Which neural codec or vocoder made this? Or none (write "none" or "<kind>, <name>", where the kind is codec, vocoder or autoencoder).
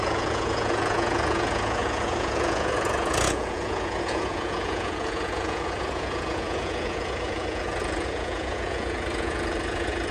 vocoder, Vocos